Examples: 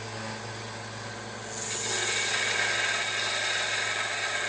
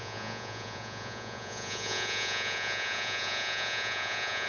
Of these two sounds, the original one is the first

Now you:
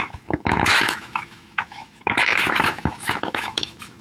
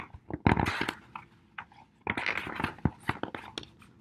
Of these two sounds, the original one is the second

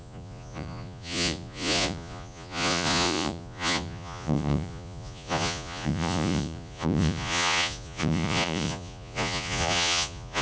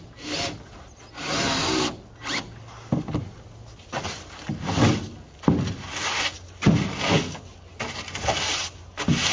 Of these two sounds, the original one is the second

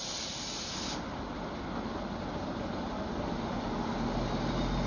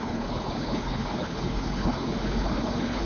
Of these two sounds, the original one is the first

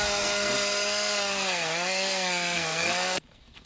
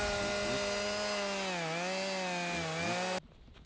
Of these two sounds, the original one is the second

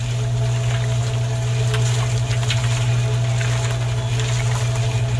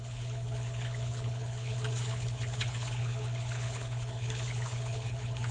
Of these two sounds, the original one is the first